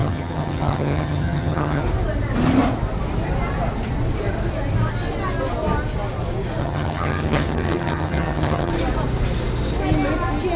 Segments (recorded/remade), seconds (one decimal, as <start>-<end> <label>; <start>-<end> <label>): 0.0-1.8 remade; 1.8-6.6 recorded; 6.6-8.7 remade; 8.7-10.6 recorded